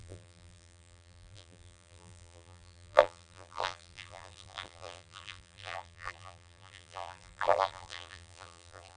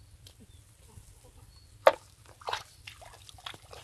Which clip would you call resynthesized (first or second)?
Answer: first